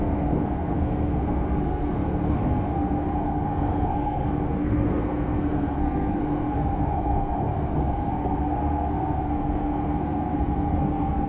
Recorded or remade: remade